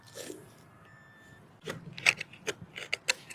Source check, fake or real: real